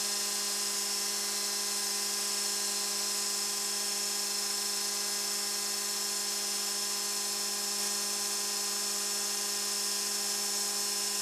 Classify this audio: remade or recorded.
recorded